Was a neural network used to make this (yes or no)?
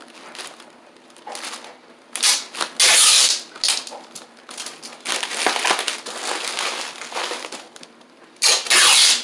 no